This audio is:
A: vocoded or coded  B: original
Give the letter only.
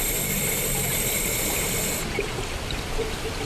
A